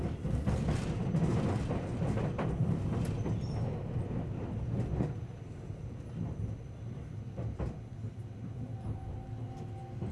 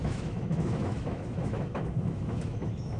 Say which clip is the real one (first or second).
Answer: first